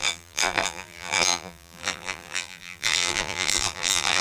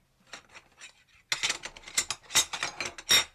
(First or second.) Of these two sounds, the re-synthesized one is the first